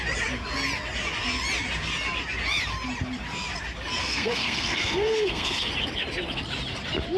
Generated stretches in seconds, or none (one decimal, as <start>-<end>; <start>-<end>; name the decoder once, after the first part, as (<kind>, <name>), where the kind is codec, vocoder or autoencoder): 4.0-5.7 (codec, SNAC)

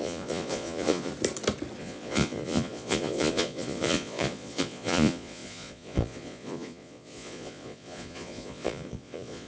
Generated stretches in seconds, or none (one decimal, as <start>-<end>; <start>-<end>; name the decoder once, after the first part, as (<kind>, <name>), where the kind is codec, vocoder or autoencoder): 0.0-1.1 (vocoder, Vocos); 1.8-9.5

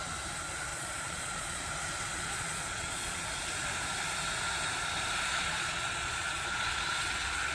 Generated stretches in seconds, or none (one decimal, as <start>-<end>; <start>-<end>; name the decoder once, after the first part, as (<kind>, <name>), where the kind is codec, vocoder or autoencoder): 0.7-1.6 (vocoder, Vocos); 2.1-3.2; 5.3-7.1

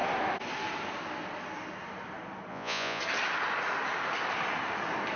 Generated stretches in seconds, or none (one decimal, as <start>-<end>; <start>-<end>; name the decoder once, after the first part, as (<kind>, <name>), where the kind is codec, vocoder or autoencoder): 2.5-3.0 (vocoder, Vocos)